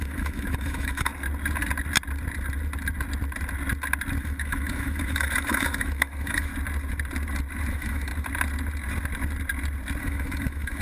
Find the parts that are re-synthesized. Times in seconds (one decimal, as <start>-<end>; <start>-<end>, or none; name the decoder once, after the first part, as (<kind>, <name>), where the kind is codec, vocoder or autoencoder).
0.0-1.1 (autoencoder, DAC-VAE); 4.2-6.5; 7.7-8.1; 10.0-10.8